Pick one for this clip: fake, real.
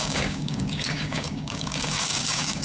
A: fake